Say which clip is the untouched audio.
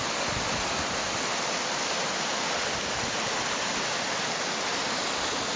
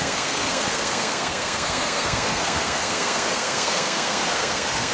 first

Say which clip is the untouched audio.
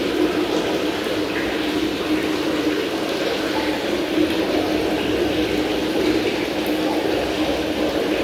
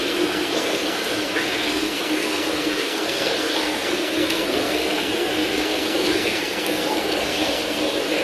first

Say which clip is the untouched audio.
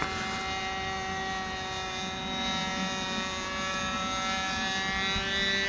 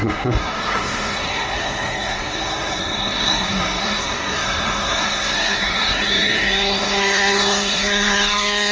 first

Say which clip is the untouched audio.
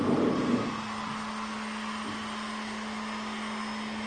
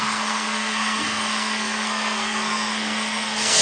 first